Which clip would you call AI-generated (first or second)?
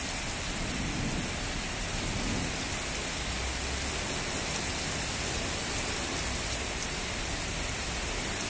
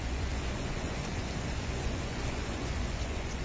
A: second